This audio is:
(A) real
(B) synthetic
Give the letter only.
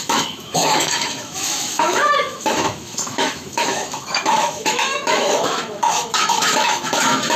B